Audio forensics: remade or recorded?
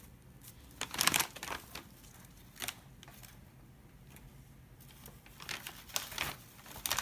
recorded